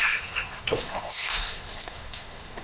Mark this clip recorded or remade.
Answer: remade